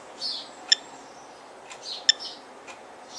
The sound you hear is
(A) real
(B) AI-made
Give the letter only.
A